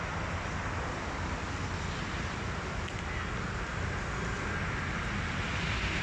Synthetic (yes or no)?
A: no